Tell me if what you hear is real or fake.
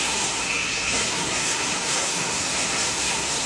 fake